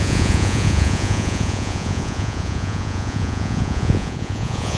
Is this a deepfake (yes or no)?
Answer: yes